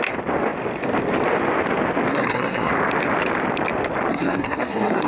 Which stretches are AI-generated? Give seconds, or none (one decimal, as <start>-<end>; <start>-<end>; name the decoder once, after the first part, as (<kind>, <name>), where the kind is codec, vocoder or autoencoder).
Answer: 2.1-2.7 (codec, SNAC); 4.1-5.1